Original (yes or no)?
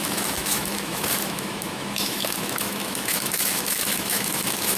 no